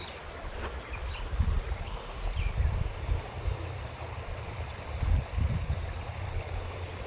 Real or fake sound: fake